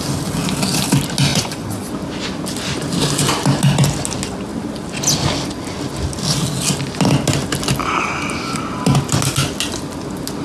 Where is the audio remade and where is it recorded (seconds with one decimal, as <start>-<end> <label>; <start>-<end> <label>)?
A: 0.0-1.3 recorded; 1.3-1.9 remade; 1.9-10.4 recorded